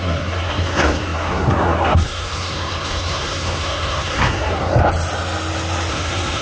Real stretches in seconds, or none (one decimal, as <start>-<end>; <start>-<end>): 4.7-5.9